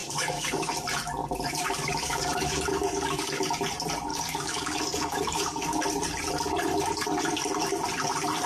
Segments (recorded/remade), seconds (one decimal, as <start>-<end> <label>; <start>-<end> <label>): 0.0-0.7 remade; 0.7-1.2 recorded; 1.2-3.4 remade; 3.4-4.1 recorded; 4.1-5.8 remade; 5.8-8.5 recorded